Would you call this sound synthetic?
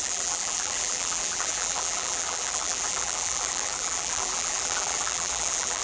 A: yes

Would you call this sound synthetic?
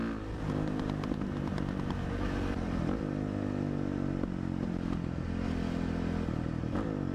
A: no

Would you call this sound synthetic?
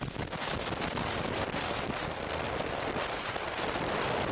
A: no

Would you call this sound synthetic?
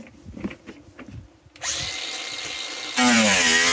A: yes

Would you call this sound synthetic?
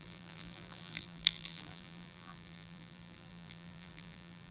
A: yes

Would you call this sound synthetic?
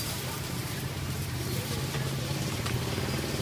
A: yes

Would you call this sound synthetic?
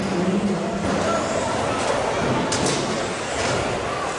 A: no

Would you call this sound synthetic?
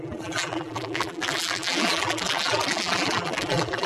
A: yes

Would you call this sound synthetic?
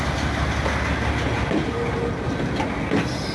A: no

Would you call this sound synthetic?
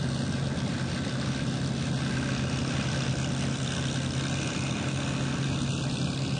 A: no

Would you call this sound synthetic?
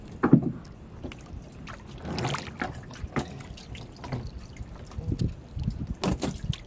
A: no